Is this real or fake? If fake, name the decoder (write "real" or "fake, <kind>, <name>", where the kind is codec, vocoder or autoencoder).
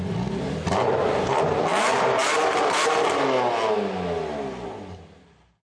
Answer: real